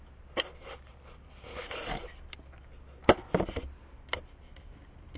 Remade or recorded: recorded